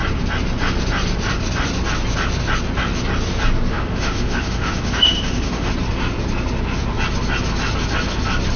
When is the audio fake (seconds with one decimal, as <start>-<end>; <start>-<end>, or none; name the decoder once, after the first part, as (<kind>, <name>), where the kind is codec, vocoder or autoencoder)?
3.7-5.7 (autoencoder, DAC-VAE)